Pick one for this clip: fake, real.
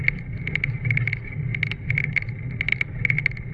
real